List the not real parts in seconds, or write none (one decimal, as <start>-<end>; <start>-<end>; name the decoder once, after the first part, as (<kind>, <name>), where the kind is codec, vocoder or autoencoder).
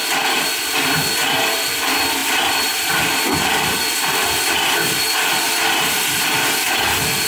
none